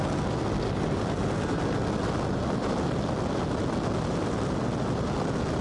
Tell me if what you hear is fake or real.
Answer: real